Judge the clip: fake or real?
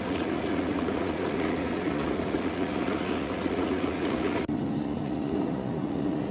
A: fake